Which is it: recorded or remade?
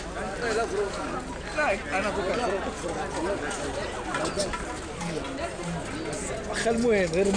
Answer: recorded